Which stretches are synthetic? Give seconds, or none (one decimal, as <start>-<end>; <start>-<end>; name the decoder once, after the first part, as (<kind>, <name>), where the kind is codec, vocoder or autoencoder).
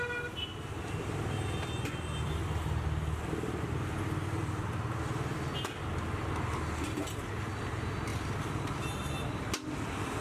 8.1-9.4 (vocoder, BigVGAN v2)